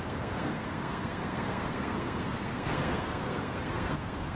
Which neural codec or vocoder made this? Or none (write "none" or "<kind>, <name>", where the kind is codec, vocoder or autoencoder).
codec, SNAC